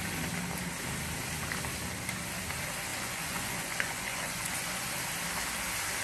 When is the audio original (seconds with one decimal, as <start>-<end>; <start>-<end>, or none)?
0.0-2.9; 4.9-6.0